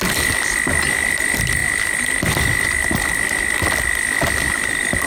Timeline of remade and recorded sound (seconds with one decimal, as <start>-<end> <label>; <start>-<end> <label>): 0.0-5.1 recorded